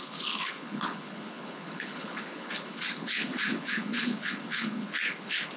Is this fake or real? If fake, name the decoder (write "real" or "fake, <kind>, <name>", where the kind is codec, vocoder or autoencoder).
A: fake, codec, HILCodec